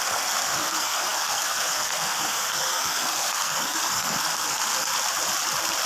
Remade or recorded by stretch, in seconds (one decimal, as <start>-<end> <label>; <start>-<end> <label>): 0.0-4.9 remade; 4.9-5.9 recorded